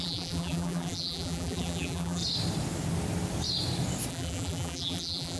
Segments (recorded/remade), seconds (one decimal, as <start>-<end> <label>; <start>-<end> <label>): 0.0-2.2 remade; 2.2-4.1 recorded; 4.1-5.4 remade

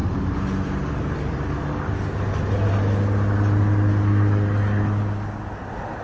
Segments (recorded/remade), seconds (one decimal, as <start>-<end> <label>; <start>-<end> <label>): 0.0-1.9 remade; 1.9-6.0 recorded

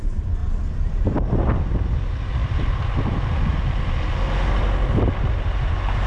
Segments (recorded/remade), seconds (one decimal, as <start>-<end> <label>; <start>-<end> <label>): 0.0-0.4 recorded; 0.4-0.9 remade; 0.9-2.4 recorded; 2.4-3.6 remade; 3.6-6.1 recorded